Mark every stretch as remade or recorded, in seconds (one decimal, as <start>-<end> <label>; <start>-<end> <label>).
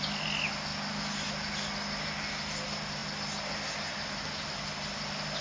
0.0-5.4 recorded